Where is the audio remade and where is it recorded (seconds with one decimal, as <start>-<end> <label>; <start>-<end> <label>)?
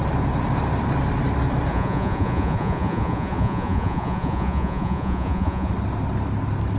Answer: 0.0-1.7 recorded; 1.7-5.7 remade; 5.7-6.8 recorded